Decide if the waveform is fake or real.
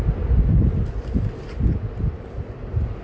real